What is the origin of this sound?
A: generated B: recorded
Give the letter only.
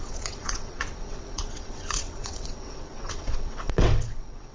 A